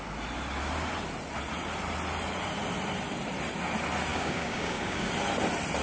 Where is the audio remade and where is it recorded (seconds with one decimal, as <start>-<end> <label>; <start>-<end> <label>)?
0.0-4.1 recorded; 4.1-5.1 remade; 5.1-5.8 recorded